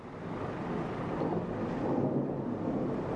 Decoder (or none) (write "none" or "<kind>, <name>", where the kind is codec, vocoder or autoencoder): none